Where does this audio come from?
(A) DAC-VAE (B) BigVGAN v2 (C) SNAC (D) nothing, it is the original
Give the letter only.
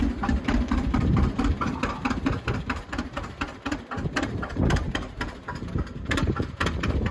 B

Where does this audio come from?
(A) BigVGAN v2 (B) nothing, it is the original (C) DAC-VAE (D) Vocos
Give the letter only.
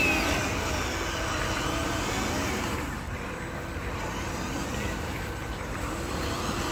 B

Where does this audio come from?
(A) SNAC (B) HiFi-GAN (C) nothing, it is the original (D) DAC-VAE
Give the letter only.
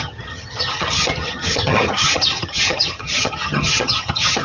B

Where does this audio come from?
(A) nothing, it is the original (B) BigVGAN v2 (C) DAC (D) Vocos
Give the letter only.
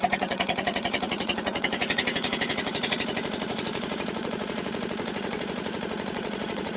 D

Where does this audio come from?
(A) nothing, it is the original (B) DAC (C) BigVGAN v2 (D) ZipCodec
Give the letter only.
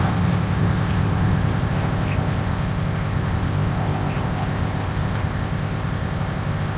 D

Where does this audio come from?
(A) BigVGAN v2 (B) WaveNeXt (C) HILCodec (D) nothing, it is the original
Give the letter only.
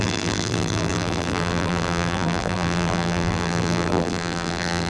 A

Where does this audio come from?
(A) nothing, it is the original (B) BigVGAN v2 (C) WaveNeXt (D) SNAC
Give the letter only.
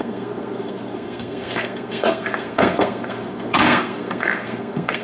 D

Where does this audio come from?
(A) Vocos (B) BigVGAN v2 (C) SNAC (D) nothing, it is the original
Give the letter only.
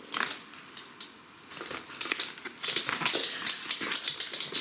D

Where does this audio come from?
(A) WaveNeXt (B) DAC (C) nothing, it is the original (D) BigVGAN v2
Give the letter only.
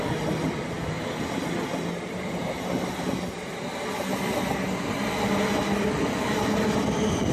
C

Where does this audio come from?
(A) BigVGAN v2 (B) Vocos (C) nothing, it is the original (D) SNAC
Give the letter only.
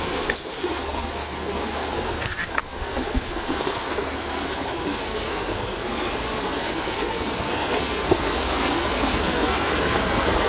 D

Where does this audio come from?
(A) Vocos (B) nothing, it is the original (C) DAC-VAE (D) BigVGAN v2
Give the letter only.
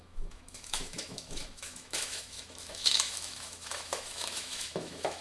C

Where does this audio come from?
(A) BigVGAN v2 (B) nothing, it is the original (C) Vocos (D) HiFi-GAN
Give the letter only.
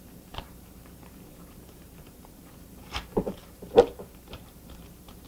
A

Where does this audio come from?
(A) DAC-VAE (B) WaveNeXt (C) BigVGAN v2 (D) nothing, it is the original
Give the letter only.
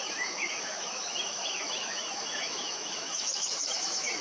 A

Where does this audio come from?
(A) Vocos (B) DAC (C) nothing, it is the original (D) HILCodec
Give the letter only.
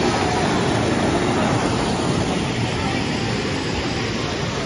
C